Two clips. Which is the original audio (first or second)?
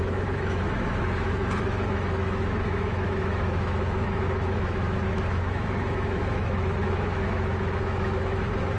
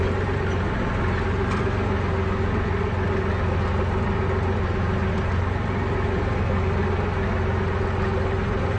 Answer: second